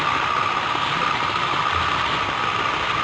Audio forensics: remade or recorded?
recorded